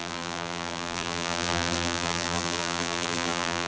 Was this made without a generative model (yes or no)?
no